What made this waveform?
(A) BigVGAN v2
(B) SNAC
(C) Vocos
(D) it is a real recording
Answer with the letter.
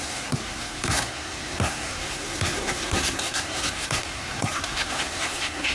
B